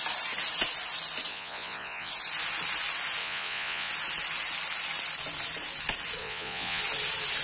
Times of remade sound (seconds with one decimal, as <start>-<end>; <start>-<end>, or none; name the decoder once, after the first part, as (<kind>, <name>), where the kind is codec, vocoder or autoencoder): 1.3-2.1 (vocoder, Vocos); 3.2-3.9; 6.2-6.8